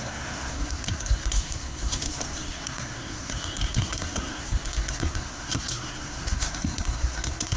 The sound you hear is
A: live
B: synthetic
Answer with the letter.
B